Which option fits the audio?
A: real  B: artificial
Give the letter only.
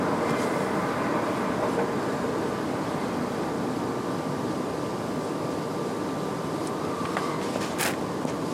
A